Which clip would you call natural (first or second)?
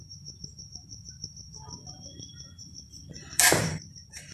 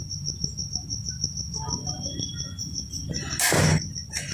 second